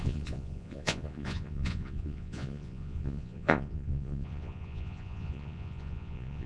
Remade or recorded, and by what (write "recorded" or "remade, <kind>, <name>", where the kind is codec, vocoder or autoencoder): remade, vocoder, Vocos